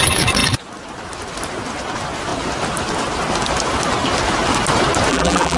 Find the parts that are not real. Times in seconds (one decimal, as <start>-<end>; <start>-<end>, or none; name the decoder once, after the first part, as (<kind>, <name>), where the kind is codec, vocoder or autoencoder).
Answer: 5.1-5.6 (vocoder, BigVGAN v2)